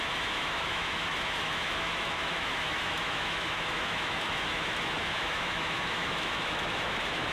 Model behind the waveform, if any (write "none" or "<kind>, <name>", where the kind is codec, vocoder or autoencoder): autoencoder, DAC-VAE